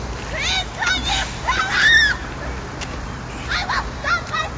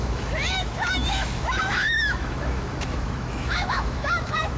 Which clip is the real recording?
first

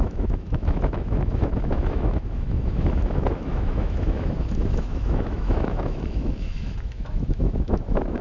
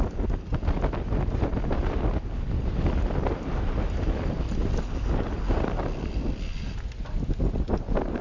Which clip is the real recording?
second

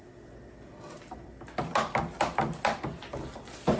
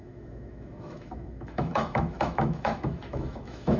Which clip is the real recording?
first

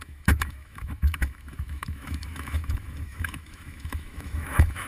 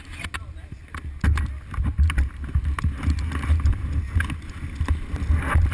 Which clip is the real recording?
second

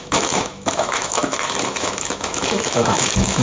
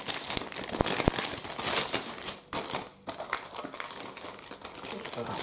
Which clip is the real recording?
second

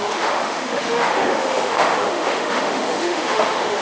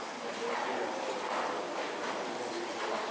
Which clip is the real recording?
second